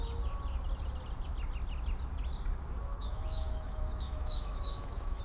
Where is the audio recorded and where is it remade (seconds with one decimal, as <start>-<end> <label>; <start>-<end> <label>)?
0.0-2.9 recorded; 2.9-5.2 remade